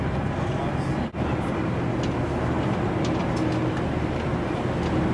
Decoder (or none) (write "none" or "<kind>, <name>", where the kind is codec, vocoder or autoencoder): none